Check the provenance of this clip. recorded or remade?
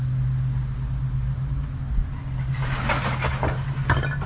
recorded